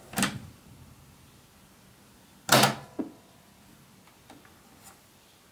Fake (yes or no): no